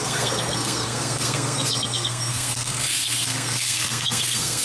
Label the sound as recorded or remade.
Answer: remade